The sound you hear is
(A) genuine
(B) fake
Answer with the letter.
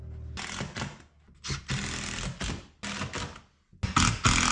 A